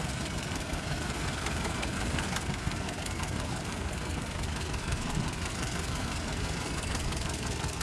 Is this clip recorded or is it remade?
remade